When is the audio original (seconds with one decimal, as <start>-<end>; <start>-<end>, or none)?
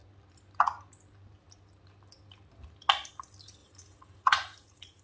0.0-3.6